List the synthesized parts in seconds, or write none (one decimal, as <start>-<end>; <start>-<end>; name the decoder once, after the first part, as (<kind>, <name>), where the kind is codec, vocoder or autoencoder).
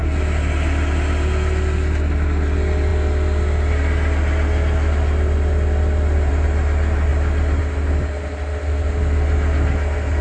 none